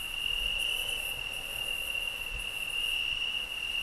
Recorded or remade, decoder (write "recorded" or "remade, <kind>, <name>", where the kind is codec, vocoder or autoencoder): recorded